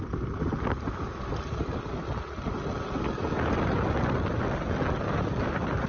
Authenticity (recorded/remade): recorded